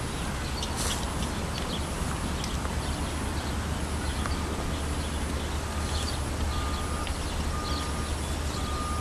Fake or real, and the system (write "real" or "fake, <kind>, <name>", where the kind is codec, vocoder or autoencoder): real